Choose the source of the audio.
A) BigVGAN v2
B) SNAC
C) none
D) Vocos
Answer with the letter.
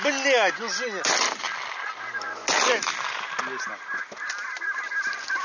C